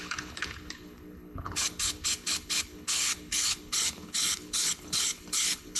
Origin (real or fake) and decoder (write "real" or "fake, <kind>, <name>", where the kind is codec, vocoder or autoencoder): fake, codec, HILCodec